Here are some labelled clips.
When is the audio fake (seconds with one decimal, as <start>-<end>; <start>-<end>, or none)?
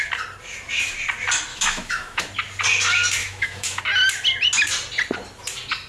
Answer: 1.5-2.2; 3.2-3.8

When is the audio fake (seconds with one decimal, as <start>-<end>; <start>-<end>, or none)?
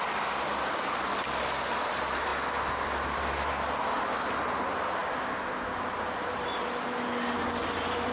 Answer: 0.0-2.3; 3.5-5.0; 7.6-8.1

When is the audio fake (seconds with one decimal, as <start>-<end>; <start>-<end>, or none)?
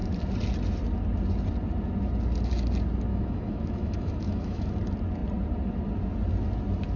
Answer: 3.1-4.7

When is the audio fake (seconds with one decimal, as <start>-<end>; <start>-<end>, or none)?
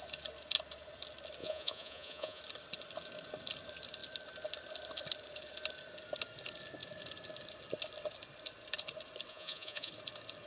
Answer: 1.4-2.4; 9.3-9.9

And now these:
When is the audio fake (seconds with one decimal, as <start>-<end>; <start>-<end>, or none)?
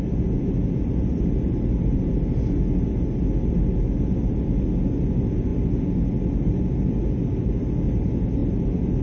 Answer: none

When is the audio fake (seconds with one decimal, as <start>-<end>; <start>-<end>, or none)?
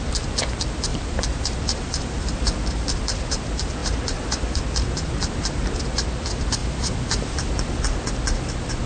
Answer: 0.9-3.0; 3.8-4.6; 6.6-7.5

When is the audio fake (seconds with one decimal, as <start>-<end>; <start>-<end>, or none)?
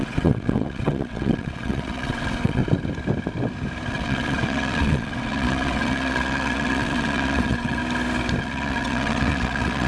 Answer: 0.0-2.6; 3.9-7.8; 8.4-9.9